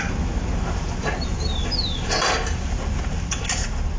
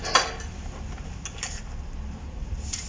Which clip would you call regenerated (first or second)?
first